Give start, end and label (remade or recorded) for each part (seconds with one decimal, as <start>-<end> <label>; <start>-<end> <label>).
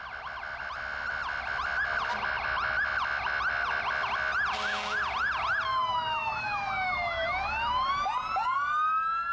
0.0-5.7 recorded; 5.7-7.9 remade; 7.9-9.3 recorded